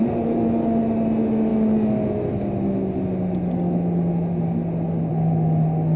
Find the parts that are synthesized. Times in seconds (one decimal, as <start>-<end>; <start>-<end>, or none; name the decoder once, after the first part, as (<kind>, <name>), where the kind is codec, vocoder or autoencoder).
none